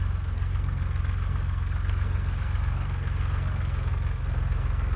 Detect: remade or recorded remade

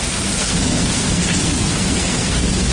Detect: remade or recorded remade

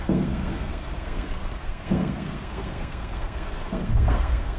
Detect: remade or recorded remade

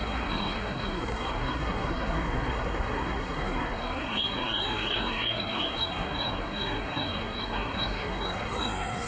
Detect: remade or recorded remade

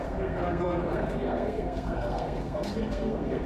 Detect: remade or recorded remade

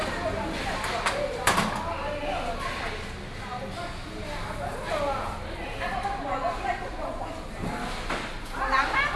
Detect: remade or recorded recorded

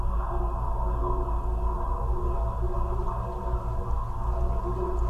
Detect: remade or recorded recorded